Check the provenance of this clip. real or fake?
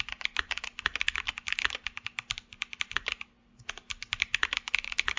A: real